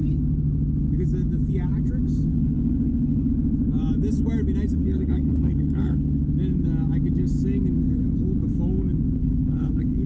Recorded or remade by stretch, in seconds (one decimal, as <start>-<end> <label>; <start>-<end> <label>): 0.0-2.3 recorded; 2.3-3.3 remade; 3.3-4.8 recorded; 4.8-6.2 remade; 6.2-9.2 recorded; 9.2-10.1 remade